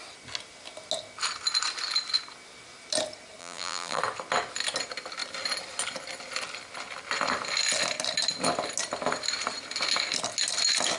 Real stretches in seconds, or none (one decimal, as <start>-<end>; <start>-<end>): 0.0-3.4; 4.0-11.0